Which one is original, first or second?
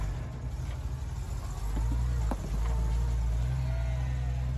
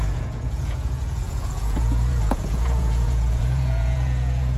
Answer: first